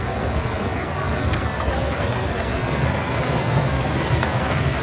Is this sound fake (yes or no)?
yes